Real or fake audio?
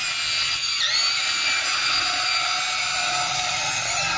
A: real